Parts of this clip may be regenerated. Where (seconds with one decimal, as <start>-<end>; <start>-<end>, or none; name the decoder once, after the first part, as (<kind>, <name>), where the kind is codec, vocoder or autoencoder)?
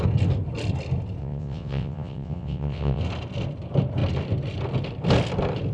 1.2-3.0 (vocoder, WaveNeXt)